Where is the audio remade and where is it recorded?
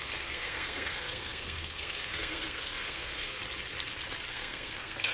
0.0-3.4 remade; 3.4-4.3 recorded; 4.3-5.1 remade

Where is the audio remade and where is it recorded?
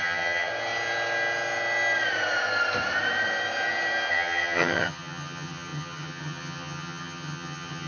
0.0-0.5 remade; 0.5-4.1 recorded; 4.1-7.9 remade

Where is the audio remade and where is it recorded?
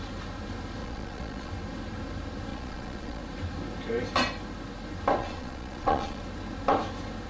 0.0-0.8 recorded; 0.8-1.5 remade; 1.5-2.5 recorded; 2.5-3.2 remade; 3.2-5.2 recorded; 5.2-6.2 remade; 6.2-7.3 recorded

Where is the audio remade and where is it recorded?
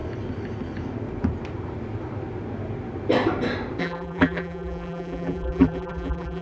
0.0-3.8 recorded; 3.8-6.4 remade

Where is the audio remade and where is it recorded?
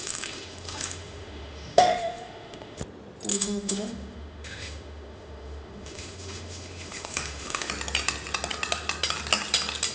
0.0-2.8 remade; 2.8-3.3 recorded; 3.3-7.7 remade; 7.7-9.9 recorded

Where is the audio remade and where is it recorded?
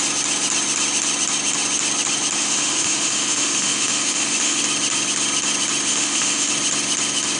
0.0-2.4 recorded; 2.4-4.6 remade; 4.6-5.9 recorded; 5.9-6.5 remade; 6.5-7.4 recorded